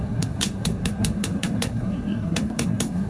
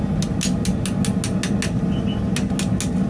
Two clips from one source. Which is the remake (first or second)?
first